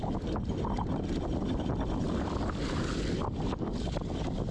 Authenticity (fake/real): real